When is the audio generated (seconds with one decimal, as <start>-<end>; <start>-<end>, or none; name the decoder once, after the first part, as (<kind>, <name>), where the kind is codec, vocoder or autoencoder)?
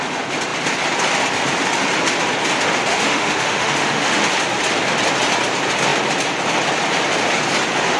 2.9-4.3 (autoencoder, DAC-VAE)